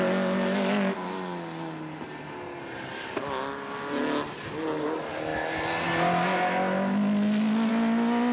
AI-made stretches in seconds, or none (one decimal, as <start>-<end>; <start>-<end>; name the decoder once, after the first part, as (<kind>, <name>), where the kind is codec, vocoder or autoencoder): none